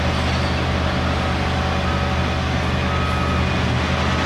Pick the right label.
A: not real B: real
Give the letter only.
B